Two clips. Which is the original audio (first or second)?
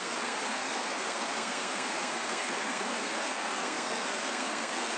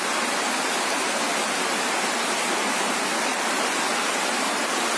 second